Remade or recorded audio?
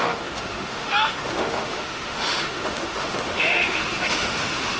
remade